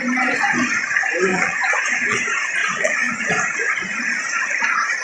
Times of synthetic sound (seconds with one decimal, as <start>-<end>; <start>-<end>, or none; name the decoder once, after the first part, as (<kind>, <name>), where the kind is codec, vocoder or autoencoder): 1.3-2.2 (vocoder, Vocos); 2.6-3.3